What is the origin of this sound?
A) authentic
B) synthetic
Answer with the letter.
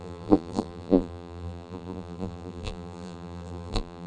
B